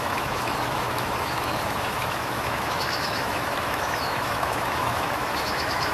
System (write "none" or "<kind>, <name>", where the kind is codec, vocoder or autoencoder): autoencoder, DAC-VAE